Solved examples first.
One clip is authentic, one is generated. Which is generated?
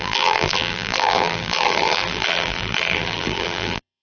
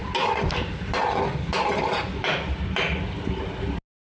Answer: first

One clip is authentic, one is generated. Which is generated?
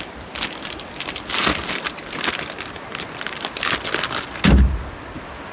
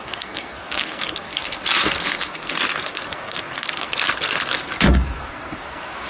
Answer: second